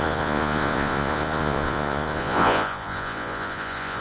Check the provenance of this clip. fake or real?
fake